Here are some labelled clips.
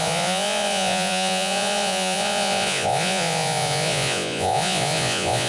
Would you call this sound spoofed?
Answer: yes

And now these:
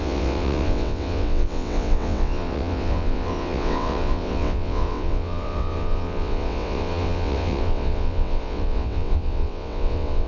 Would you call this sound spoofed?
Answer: yes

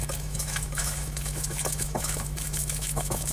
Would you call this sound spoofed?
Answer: yes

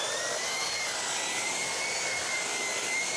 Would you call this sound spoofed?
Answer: yes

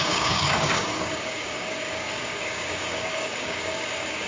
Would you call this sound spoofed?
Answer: yes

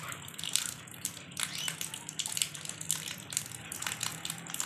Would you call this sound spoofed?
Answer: no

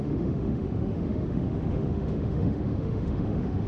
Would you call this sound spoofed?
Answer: yes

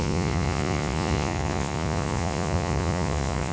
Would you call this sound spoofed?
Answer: yes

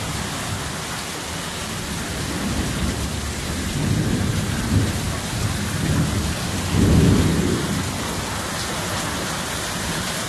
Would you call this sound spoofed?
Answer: no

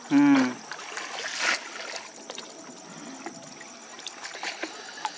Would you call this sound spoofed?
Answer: no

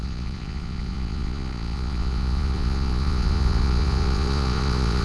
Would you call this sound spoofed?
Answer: yes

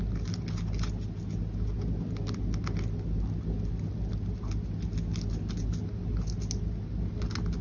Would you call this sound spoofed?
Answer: no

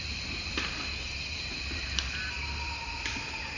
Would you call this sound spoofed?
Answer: no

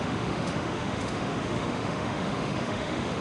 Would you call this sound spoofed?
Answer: yes